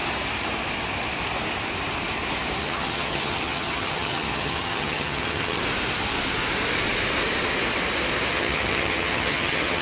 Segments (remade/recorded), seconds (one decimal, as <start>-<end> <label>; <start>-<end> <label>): 0.0-2.6 recorded; 2.6-5.6 remade; 5.6-8.3 recorded; 8.3-9.8 remade